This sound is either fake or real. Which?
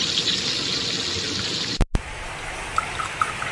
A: real